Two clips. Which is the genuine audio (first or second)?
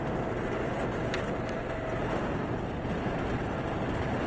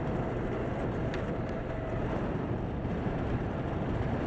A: first